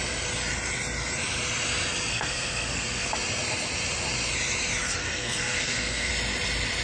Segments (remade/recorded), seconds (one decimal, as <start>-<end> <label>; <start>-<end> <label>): 0.0-2.1 recorded; 2.1-3.1 remade; 3.1-5.0 recorded; 5.0-6.1 remade; 6.1-6.8 recorded